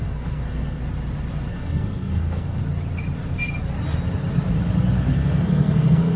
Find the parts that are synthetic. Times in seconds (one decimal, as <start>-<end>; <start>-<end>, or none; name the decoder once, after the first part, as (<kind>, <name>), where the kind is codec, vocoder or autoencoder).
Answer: 0.0-0.8 (codec, SNAC); 1.5-2.6; 5.1-6.2